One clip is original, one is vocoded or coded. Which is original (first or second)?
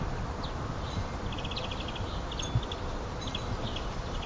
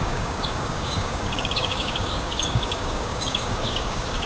first